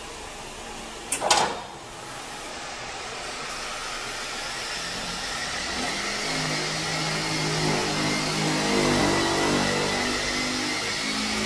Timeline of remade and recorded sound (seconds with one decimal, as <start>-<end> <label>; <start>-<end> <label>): 0.0-2.5 recorded; 2.5-3.5 remade; 3.5-5.4 recorded; 5.4-5.9 remade; 5.9-11.5 recorded